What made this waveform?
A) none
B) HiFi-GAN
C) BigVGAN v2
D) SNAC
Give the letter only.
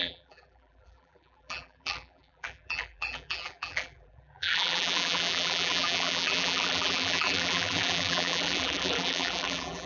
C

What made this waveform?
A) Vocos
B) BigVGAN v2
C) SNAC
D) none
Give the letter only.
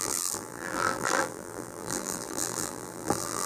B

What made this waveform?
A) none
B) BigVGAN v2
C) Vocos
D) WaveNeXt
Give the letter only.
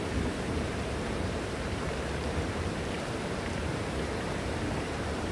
B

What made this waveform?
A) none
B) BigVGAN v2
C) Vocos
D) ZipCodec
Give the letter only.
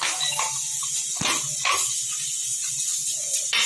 A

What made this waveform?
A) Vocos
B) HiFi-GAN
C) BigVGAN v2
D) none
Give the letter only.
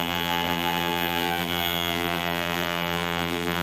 C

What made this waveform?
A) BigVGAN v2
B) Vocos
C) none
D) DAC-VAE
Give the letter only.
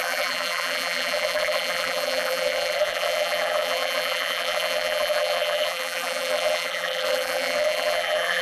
A